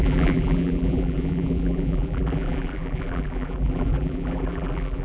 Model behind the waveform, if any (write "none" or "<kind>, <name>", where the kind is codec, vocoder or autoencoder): vocoder, BigVGAN v2